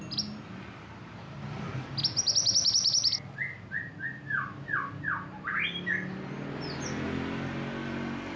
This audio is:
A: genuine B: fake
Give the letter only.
A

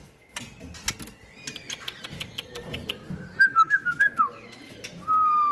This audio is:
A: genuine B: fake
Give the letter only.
A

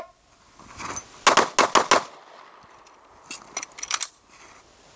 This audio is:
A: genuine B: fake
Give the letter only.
A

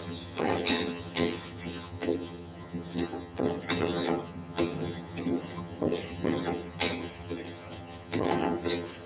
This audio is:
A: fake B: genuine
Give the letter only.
A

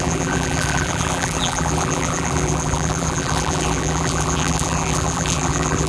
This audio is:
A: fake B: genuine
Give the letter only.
A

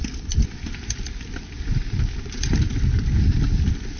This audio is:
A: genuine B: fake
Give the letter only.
A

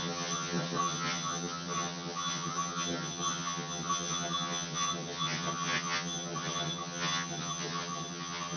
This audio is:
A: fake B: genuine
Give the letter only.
A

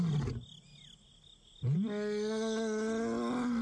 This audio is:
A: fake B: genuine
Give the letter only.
B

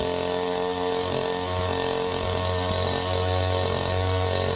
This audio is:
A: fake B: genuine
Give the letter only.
B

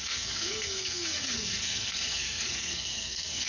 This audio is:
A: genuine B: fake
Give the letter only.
B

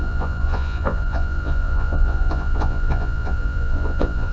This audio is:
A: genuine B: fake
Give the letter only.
B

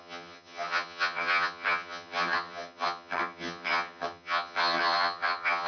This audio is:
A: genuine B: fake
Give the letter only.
B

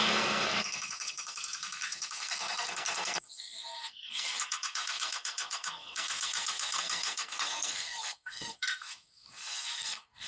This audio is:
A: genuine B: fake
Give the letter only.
B